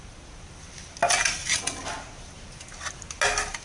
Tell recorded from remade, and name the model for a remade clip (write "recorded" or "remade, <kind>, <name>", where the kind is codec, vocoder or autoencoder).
recorded